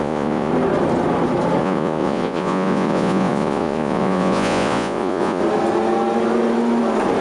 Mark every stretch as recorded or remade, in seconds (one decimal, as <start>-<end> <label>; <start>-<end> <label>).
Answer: 0.0-0.5 remade; 0.5-1.6 recorded; 1.6-5.4 remade; 5.4-7.2 recorded